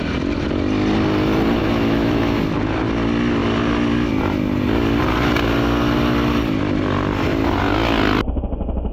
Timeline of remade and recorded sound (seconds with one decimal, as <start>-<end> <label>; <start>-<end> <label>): 0.0-1.6 recorded; 1.6-2.4 remade; 2.4-8.9 recorded